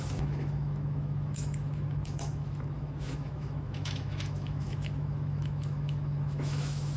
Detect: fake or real fake